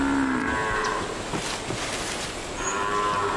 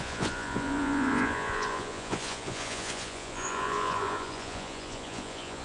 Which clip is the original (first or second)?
first